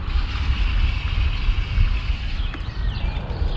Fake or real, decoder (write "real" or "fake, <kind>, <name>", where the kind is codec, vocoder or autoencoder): real